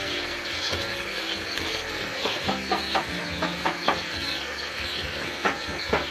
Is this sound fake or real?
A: fake